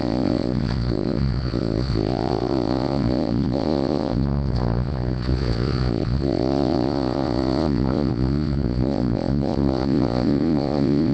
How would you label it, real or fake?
fake